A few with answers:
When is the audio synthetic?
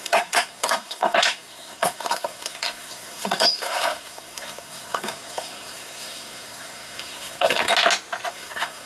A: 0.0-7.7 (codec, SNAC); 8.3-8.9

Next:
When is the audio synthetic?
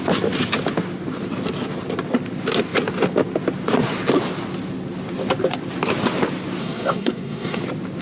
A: 6.6-7.6 (codec, SNAC)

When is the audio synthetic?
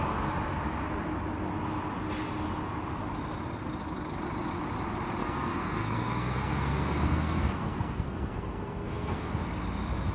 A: 5.2-9.3 (codec, SNAC)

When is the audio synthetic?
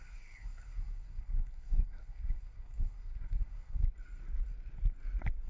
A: 0.0-3.8 (codec, SNAC)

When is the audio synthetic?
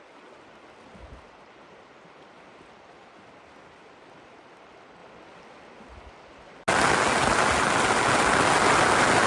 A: none